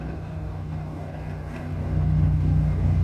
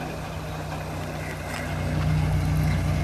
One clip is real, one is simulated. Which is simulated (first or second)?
first